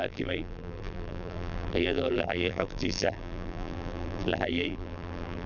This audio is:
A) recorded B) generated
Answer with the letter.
B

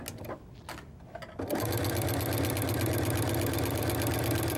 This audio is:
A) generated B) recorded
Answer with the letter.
B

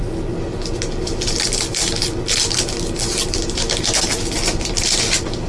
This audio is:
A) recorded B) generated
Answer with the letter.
A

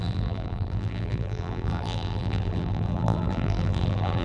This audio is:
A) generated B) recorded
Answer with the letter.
A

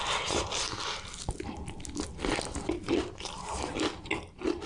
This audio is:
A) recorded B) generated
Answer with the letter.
A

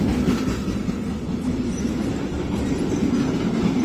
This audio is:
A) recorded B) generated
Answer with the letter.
A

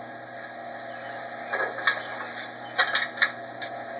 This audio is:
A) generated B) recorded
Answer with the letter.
B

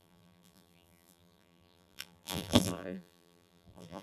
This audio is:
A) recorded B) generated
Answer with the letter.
B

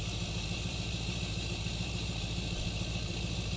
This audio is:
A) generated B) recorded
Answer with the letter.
A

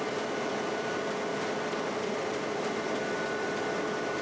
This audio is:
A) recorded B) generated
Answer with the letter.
A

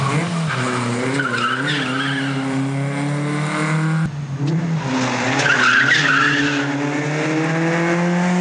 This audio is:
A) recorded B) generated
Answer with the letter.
A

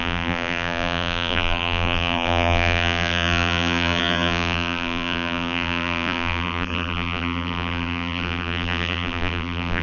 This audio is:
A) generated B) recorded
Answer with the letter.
A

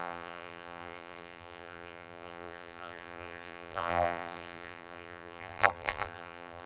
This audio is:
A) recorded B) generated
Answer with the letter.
B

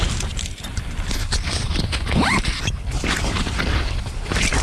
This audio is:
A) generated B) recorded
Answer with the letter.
A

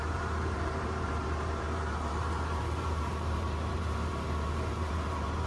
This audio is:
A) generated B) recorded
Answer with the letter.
A